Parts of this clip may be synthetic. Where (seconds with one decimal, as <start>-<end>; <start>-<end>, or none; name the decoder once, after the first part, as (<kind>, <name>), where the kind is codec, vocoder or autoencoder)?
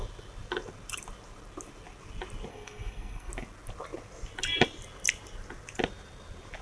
2.5-3.3 (codec, SNAC)